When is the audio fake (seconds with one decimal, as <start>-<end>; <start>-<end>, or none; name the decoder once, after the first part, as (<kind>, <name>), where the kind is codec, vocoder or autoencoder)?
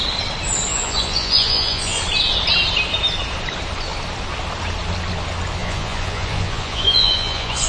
0.7-2.0 (vocoder, Vocos); 5.6-7.7